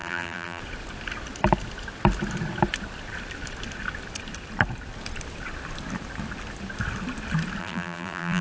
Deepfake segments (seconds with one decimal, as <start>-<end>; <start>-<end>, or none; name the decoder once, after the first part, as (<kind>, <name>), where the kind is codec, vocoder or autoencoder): 0.0-0.6 (vocoder, BigVGAN v2); 7.6-8.4